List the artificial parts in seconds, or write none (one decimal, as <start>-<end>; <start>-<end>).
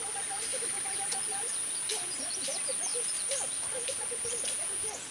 2.9-4.0